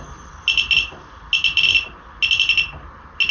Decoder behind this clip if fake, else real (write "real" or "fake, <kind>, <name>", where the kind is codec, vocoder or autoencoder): real